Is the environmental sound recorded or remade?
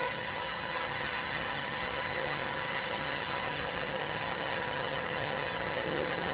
remade